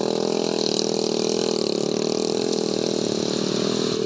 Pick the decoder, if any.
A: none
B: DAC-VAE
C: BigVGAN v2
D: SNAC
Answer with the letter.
A